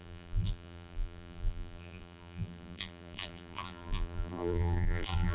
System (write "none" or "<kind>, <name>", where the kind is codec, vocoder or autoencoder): vocoder, BigVGAN v2